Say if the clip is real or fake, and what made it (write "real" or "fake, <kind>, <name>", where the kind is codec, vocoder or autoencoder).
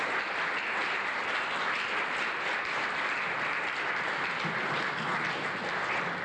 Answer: real